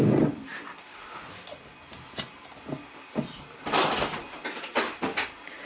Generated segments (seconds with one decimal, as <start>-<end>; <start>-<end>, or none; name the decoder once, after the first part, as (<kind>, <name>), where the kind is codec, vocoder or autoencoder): 0.0-0.5 (vocoder, BigVGAN v2); 3.9-5.7